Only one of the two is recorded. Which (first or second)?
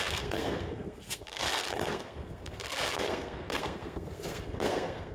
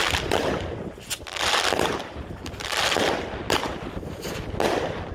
second